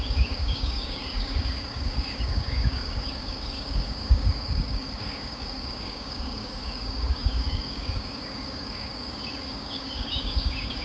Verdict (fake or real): fake